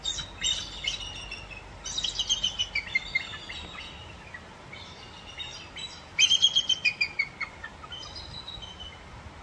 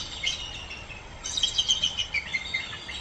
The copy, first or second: second